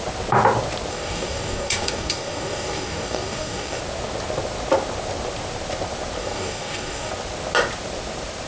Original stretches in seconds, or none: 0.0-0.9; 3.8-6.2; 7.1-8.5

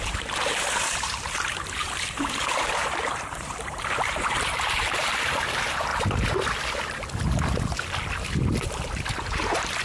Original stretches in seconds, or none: 5.9-9.1

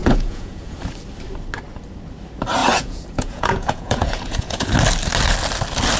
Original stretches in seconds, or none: 0.8-2.6; 4.7-6.0

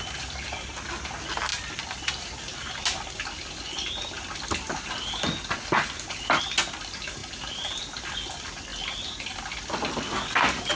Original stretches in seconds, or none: 0.0-10.8

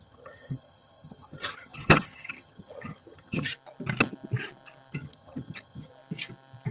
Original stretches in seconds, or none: 3.5-4.9; 5.9-6.7

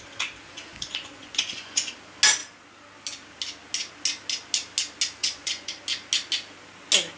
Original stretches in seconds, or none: 0.0-0.7; 1.9-5.2; 5.8-7.2

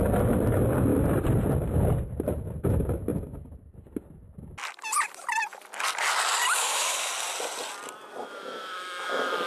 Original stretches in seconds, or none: 0.0-6.6; 7.1-8.2

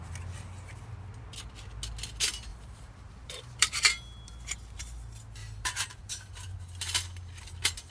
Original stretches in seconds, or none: 0.0-2.5; 3.9-5.4; 6.3-7.9